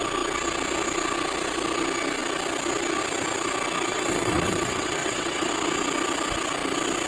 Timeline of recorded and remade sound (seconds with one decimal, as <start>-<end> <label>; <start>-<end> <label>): 0.0-3.9 recorded; 3.9-5.5 remade; 5.5-7.1 recorded